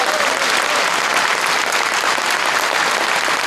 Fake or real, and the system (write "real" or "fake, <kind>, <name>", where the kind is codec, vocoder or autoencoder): real